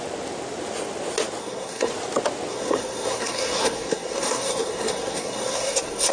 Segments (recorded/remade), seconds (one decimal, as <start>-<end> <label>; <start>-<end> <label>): 0.0-1.4 recorded; 1.4-1.9 remade; 1.9-2.5 recorded; 2.5-6.1 remade